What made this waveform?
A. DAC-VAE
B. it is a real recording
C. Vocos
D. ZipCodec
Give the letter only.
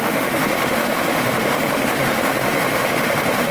A